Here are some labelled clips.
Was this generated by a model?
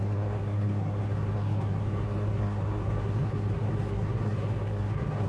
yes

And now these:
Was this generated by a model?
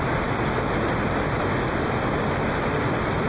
no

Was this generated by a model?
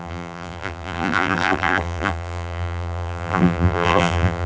yes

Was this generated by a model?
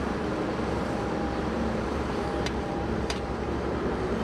yes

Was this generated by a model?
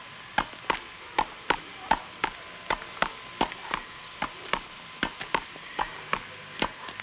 no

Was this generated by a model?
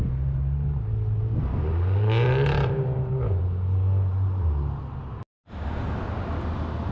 no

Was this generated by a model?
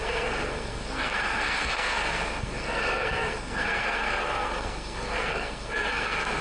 yes